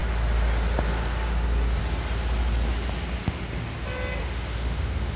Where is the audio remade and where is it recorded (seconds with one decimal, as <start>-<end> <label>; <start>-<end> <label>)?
0.0-4.2 recorded; 4.2-5.2 remade